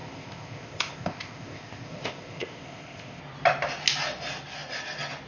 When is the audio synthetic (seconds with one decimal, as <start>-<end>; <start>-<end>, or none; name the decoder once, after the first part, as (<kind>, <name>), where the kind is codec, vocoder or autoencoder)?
0.0-3.2 (codec, ZipCodec)